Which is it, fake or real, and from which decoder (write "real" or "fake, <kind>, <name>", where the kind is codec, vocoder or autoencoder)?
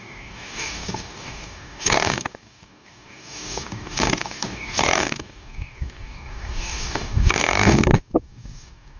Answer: fake, codec, DAC